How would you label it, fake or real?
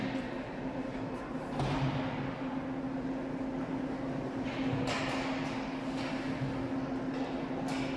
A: real